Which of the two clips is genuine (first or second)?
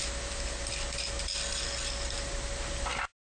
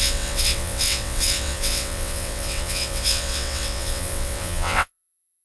first